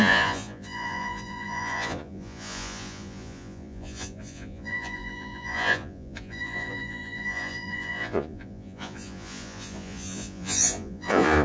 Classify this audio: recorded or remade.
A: remade